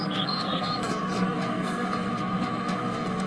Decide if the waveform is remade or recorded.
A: remade